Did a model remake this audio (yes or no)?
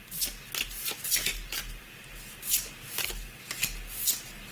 no